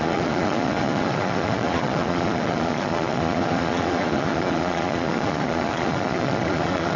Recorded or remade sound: remade